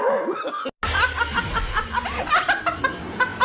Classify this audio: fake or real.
real